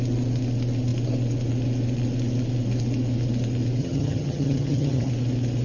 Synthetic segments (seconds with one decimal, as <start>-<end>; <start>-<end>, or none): 3.8-5.1